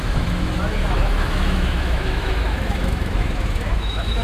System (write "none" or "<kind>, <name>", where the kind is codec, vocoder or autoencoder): autoencoder, DAC-VAE